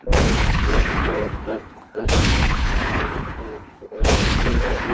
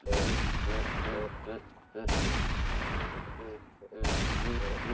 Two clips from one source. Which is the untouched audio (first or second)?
second